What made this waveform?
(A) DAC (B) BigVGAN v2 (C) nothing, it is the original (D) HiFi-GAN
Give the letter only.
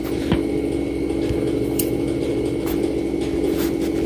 C